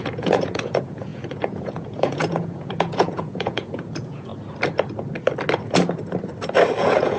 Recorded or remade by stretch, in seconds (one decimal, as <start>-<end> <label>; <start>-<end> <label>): 0.0-4.3 remade; 4.3-6.8 recorded; 6.8-7.2 remade